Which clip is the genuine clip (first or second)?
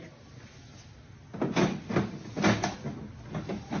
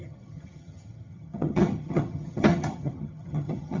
first